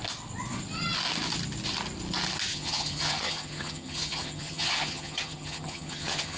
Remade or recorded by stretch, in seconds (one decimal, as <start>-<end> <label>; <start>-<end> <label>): 0.0-2.5 recorded; 2.5-6.4 remade